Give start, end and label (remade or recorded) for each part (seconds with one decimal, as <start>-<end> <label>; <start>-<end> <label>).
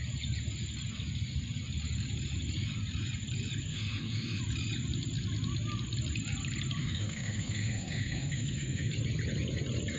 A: 0.0-3.7 recorded; 3.7-4.4 remade; 4.4-6.8 recorded; 6.8-8.9 remade; 8.9-10.0 recorded